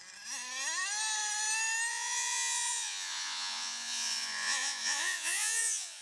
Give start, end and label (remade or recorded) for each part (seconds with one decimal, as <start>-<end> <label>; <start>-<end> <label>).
0.0-1.9 recorded; 1.9-6.0 remade